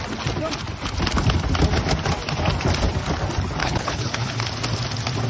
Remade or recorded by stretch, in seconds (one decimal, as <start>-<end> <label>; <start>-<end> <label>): 0.0-3.6 recorded; 3.6-4.4 remade; 4.4-5.3 recorded